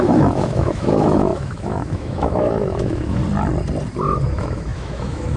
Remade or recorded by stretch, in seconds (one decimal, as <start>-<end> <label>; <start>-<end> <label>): 0.0-3.2 remade; 3.2-4.2 recorded; 4.2-5.4 remade